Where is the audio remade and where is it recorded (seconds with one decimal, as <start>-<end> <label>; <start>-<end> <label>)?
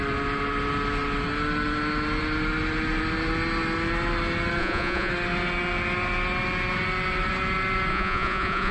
0.0-4.6 recorded; 4.6-5.1 remade; 5.1-7.9 recorded; 7.9-8.7 remade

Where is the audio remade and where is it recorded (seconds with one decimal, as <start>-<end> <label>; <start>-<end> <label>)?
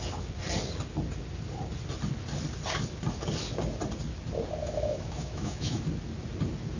0.0-4.6 recorded; 4.6-5.8 remade; 5.8-6.8 recorded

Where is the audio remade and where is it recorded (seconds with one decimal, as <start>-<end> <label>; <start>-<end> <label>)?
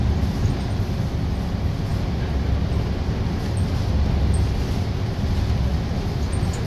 0.0-6.7 recorded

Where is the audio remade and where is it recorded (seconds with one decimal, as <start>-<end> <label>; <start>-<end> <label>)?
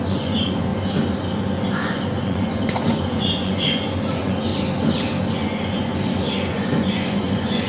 0.0-0.7 remade; 0.7-1.7 recorded; 1.7-4.5 remade; 4.5-5.3 recorded; 5.3-5.9 remade; 5.9-6.5 recorded; 6.5-7.7 remade